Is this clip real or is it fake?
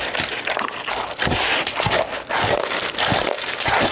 real